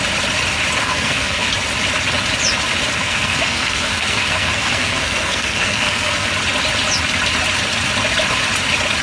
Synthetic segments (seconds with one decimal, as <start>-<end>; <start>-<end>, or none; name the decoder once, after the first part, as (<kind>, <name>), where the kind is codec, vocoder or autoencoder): 0.8-1.5 (codec, SNAC); 3.0-6.3